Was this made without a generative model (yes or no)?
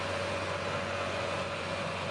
no